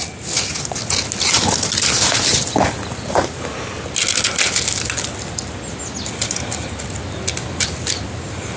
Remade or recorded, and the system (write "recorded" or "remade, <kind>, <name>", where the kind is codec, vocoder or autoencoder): recorded